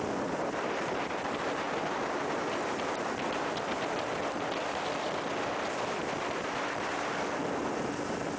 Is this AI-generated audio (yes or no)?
no